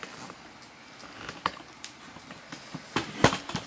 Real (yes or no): yes